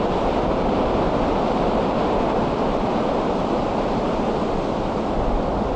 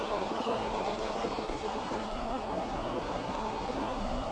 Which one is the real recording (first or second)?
first